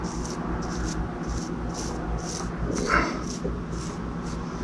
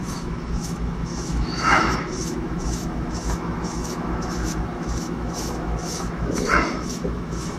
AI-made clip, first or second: second